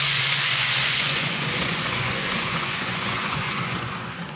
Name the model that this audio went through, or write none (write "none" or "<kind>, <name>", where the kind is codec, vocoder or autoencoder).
vocoder, Vocos